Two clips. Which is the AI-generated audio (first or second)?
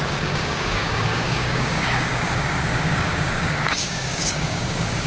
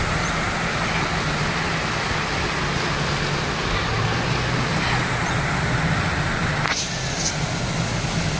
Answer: first